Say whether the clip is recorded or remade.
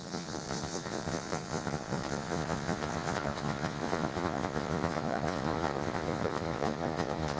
remade